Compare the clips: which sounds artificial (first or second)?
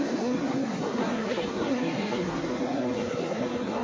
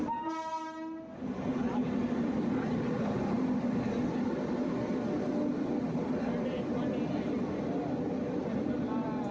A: first